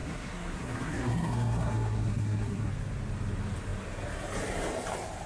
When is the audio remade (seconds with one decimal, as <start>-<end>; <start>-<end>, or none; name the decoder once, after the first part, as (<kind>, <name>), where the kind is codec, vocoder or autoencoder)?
0.0-2.7 (codec, SNAC)